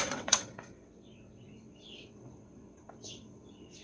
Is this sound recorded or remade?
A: remade